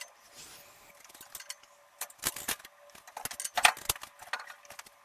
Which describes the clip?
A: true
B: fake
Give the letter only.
A